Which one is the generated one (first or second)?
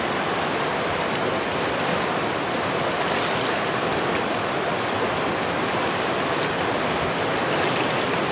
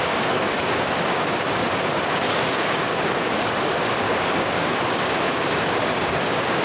second